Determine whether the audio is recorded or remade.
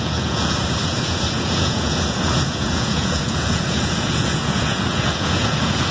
remade